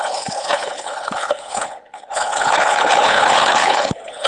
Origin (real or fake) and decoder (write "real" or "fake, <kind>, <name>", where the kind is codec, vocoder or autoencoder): fake, codec, HILCodec